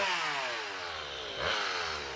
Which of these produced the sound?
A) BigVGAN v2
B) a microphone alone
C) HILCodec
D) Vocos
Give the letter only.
B